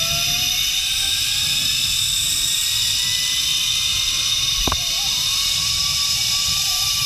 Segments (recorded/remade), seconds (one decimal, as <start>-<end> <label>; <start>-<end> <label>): 0.0-3.9 recorded; 3.9-7.1 remade